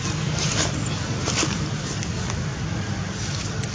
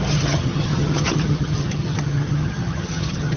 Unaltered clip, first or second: first